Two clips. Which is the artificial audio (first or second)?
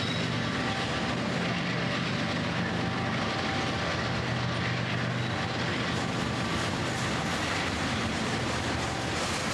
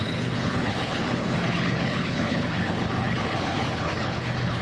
second